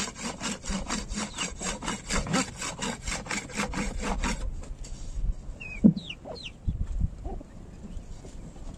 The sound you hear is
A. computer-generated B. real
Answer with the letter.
B